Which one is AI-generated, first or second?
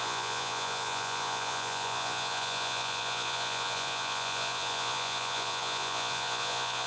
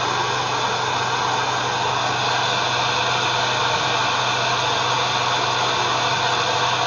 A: first